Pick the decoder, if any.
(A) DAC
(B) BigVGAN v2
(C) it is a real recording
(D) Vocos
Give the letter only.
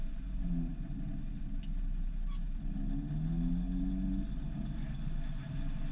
C